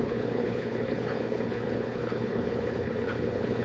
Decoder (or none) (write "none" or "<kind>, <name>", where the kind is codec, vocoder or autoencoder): codec, HILCodec